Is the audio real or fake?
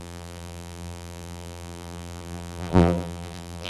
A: fake